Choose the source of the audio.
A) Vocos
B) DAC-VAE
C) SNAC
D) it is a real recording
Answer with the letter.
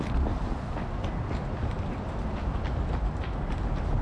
D